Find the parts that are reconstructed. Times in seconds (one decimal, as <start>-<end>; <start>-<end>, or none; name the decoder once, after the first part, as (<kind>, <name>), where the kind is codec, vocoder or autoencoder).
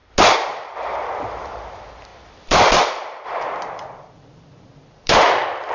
1.3-5.7 (vocoder, BigVGAN v2)